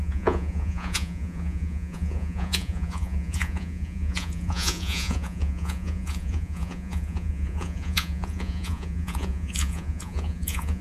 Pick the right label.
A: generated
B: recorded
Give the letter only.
A